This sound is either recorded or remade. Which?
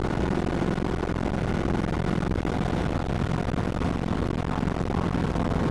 recorded